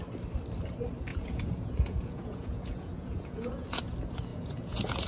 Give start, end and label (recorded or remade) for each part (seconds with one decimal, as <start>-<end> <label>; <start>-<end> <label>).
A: 0.0-1.1 recorded; 1.1-3.8 remade; 3.8-4.3 recorded; 4.3-5.1 remade